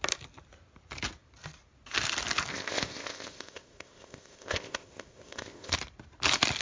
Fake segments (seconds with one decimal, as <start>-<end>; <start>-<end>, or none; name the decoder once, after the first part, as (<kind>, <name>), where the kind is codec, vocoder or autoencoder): 2.5-5.7 (codec, ZipCodec)